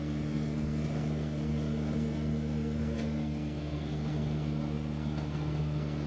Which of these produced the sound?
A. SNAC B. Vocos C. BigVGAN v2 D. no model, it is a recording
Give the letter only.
A